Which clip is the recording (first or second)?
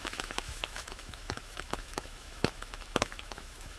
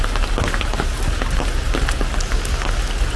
second